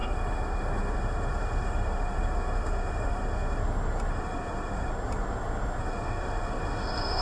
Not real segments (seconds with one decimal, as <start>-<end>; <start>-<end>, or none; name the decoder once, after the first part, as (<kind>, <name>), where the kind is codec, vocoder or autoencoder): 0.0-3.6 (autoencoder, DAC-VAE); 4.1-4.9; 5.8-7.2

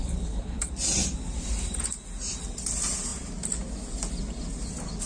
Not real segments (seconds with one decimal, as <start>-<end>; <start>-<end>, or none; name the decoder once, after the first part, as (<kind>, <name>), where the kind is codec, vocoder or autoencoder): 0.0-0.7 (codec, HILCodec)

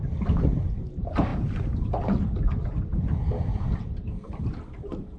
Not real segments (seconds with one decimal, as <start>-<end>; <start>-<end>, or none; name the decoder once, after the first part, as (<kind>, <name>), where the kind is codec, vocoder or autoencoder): none

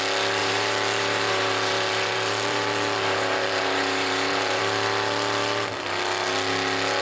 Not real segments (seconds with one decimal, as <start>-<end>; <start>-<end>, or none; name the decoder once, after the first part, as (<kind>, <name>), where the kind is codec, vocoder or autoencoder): 0.4-4.6 (vocoder, BigVGAN v2)

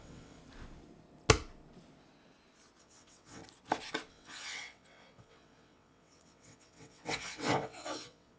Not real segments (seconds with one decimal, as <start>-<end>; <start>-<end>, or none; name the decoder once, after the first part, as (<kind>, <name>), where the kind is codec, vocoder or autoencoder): 0.0-0.4 (vocoder, WaveNeXt); 2.8-3.4; 4.1-8.4

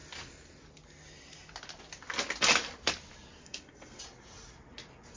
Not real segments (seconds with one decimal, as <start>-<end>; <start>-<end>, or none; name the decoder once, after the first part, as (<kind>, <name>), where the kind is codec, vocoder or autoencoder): 3.4-4.0 (codec, SNAC)

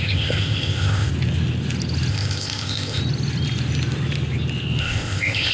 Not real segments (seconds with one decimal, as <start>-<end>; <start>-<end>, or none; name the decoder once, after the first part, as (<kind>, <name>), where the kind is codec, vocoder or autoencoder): 0.0-1.1 (codec, ZipCodec); 2.1-3.0; 4.8-5.5